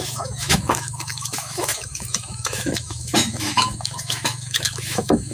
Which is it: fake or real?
fake